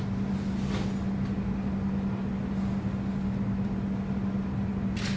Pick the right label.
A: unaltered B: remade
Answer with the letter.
A